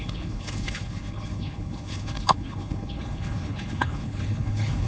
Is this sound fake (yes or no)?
yes